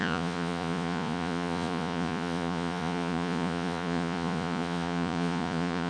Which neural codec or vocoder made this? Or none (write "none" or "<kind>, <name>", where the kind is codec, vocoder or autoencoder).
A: vocoder, Vocos